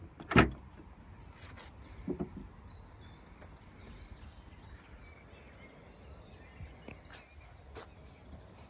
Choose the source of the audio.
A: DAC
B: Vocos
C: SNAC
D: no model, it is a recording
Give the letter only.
D